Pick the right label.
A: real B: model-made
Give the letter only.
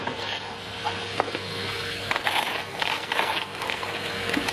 B